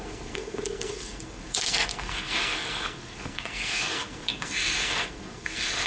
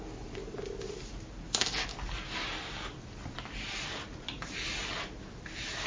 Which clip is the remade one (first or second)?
first